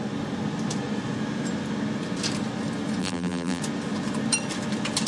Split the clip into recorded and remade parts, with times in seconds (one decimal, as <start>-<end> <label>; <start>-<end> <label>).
0.0-3.0 recorded; 3.0-3.6 remade; 3.6-5.1 recorded